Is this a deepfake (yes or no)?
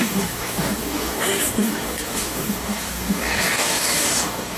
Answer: yes